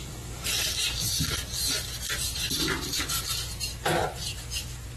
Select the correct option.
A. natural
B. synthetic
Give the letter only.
A